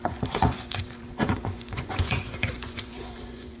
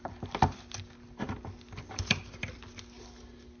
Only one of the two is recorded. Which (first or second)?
second